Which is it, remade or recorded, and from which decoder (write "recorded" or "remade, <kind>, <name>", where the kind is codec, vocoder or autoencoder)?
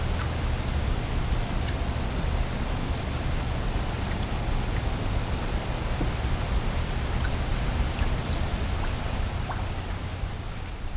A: recorded